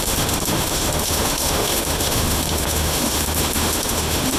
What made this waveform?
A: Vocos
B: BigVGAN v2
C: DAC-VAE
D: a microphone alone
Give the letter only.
C